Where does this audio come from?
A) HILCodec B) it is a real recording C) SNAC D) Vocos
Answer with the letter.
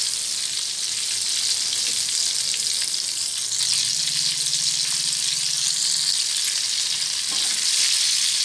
B